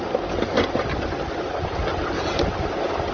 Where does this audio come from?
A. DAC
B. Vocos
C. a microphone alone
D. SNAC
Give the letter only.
C